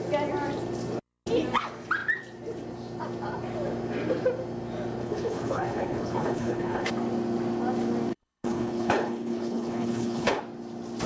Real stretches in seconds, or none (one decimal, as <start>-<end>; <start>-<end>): 0.0-5.0; 6.9-8.1; 10.4-11.1